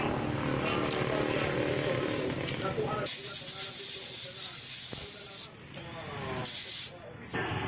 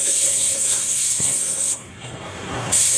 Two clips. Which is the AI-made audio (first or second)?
second